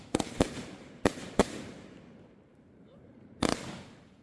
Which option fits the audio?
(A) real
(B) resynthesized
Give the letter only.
B